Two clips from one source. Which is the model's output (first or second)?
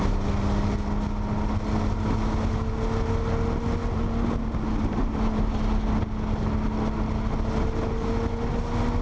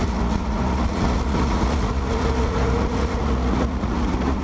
second